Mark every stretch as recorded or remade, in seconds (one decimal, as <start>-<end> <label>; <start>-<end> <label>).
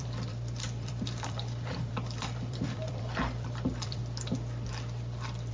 0.0-4.0 remade; 4.0-5.5 recorded